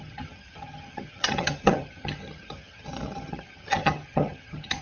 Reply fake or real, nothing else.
fake